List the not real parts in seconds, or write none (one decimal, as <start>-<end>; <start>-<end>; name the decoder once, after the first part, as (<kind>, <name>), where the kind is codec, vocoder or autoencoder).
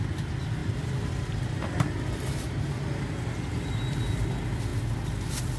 none